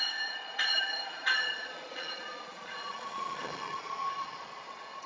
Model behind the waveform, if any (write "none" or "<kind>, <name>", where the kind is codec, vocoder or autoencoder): vocoder, Vocos